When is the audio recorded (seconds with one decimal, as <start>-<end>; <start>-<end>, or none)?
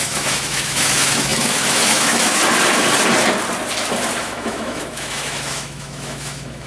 2.4-4.2